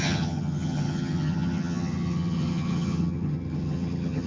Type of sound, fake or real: fake